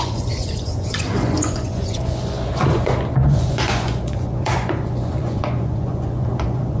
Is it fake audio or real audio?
fake